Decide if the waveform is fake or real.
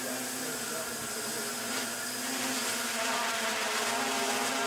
real